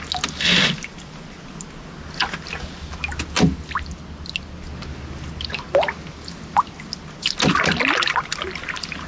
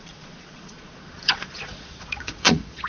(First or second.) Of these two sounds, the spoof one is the second